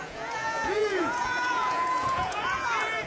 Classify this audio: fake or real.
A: fake